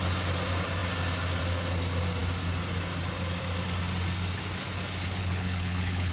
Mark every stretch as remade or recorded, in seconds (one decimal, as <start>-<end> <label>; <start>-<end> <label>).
0.0-5.2 recorded; 5.2-6.1 remade